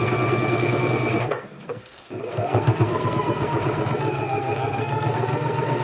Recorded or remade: remade